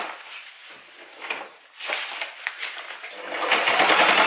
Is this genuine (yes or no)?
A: yes